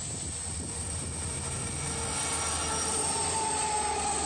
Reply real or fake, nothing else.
real